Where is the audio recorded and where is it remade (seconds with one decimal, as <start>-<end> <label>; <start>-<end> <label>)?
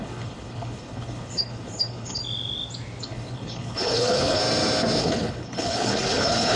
0.0-2.2 remade; 2.2-3.0 recorded; 3.0-4.4 remade; 4.4-5.0 recorded; 5.0-6.6 remade